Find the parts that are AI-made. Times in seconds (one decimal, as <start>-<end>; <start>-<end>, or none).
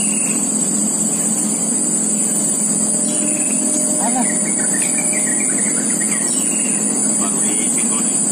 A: none